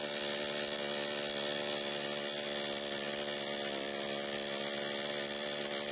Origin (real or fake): real